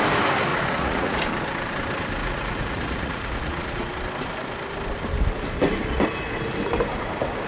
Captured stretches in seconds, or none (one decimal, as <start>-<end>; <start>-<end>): 0.0-0.5; 1.2-2.2; 3.9-7.5

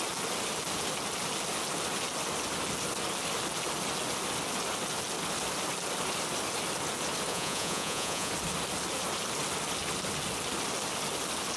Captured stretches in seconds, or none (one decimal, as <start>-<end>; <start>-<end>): 0.0-7.3; 8.3-11.6

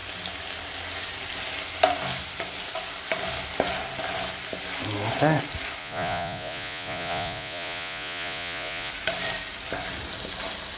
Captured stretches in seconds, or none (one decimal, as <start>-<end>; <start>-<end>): 0.0-5.8; 8.9-10.8

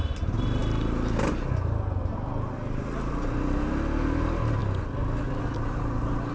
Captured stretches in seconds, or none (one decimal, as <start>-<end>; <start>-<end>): 0.0-6.3

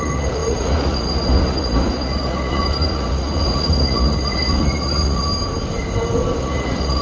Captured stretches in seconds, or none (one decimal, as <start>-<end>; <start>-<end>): 5.3-6.4

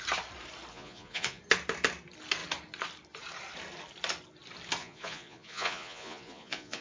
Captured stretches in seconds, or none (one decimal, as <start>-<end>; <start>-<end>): 0.0-0.7; 1.4-4.8

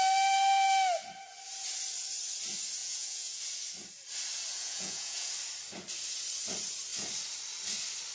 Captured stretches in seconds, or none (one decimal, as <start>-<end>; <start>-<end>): 0.0-2.8; 3.4-4.6; 5.3-8.1